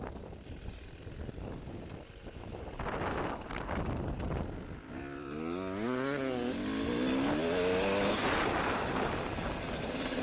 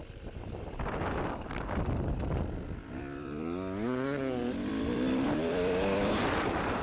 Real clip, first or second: first